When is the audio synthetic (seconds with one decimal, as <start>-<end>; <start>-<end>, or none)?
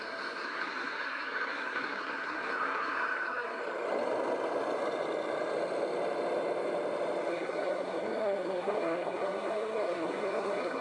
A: 0.0-3.6; 7.3-10.8